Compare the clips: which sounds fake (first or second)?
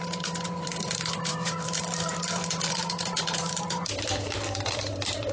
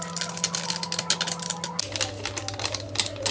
first